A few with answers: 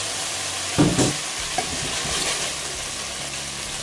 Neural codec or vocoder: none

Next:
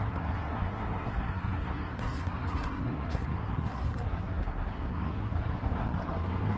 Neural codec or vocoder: codec, SNAC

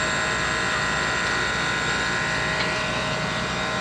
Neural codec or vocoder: none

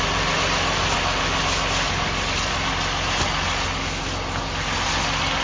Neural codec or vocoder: none